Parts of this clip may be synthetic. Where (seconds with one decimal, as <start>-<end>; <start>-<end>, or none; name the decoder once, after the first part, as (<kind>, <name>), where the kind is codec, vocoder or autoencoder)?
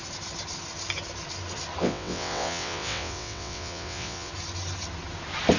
1.8-4.3 (vocoder, WaveNeXt)